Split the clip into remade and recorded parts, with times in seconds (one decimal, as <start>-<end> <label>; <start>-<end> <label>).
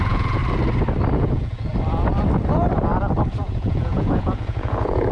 0.0-0.4 remade; 0.4-1.1 recorded; 1.1-1.7 remade; 1.7-3.4 recorded; 3.4-5.1 remade